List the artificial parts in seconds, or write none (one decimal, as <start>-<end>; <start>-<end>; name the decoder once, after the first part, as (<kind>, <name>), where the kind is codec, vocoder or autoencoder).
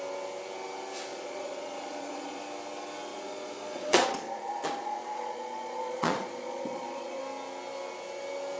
1.1-2.4 (vocoder, Vocos); 3.1-7.2